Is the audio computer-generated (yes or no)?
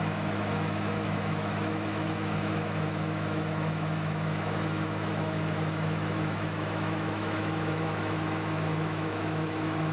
yes